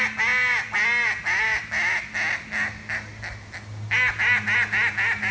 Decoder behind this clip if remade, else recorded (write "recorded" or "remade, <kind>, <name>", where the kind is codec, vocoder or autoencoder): recorded